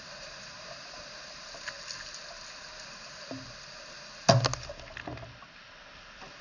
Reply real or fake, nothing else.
real